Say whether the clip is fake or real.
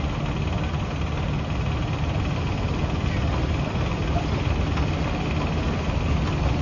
real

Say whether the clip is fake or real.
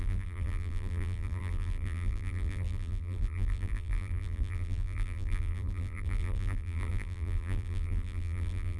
fake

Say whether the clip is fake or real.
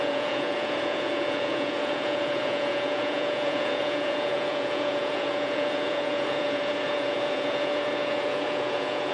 fake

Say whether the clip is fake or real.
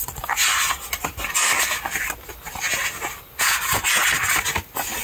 real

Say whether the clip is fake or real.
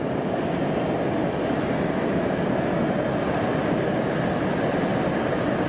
real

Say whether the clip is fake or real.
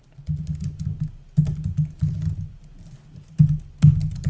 real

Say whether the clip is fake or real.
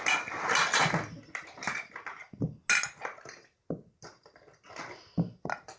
real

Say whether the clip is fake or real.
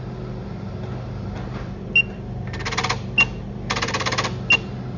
real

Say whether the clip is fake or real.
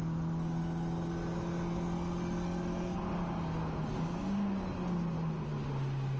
real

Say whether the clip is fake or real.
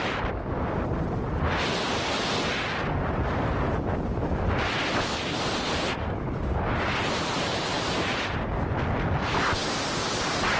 real